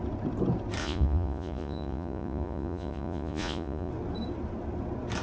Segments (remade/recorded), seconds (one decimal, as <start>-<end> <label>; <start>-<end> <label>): 0.0-0.8 recorded; 0.8-3.9 remade; 3.9-5.2 recorded